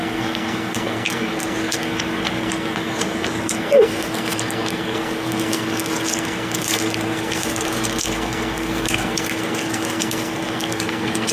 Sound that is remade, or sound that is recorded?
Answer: remade